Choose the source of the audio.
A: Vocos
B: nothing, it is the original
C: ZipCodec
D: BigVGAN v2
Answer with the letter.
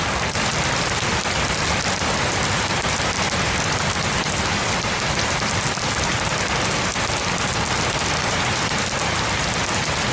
B